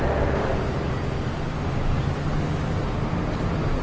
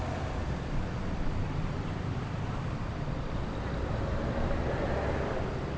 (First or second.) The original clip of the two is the first